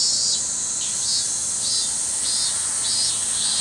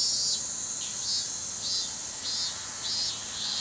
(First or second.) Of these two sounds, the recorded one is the second